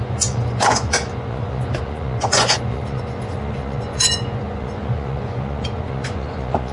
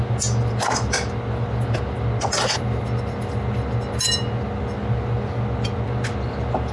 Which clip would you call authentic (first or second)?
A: second